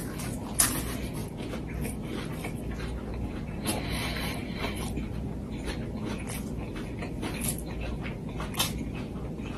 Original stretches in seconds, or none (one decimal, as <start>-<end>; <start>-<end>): 0.0-4.4; 5.7-9.6